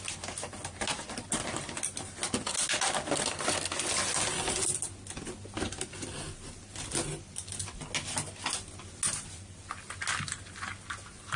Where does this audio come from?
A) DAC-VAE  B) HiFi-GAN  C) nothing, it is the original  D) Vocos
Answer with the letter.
C